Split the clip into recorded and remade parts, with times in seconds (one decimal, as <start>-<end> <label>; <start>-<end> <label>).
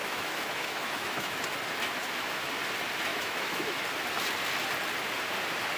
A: 0.0-1.4 remade; 1.4-2.0 recorded; 2.0-2.5 remade; 2.5-3.1 recorded; 3.1-3.8 remade; 3.8-5.8 recorded